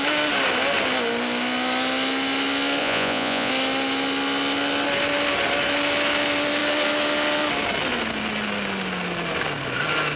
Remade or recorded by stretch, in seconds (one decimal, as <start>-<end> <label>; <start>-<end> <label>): 0.0-2.8 recorded; 2.8-3.5 remade; 3.5-10.2 recorded